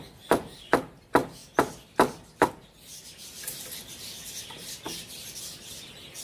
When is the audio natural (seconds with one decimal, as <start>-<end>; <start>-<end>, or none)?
0.0-2.9; 5.8-6.2